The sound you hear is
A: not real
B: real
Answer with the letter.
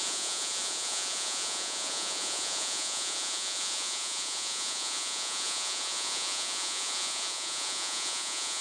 A